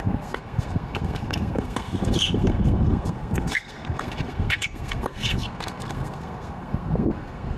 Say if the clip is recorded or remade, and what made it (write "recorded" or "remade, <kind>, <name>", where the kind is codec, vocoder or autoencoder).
remade, codec, SNAC